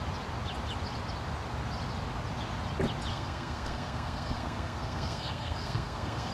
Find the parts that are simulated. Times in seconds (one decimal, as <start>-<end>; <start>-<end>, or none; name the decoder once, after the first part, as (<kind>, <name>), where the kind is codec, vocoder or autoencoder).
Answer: 3.1-6.3 (codec, SNAC)